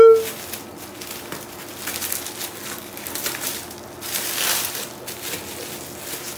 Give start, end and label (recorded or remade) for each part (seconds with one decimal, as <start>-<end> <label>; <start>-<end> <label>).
0.0-6.4 recorded